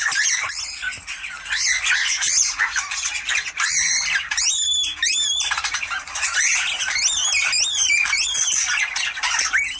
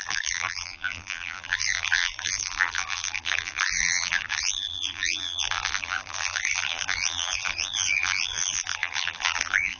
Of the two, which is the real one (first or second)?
first